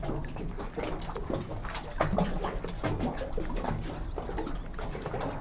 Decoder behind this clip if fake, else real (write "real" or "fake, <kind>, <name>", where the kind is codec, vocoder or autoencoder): real